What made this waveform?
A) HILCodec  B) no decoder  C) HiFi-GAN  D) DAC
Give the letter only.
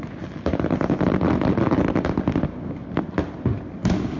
B